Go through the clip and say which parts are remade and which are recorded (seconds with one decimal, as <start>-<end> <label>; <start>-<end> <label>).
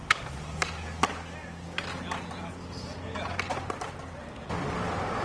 0.0-5.2 recorded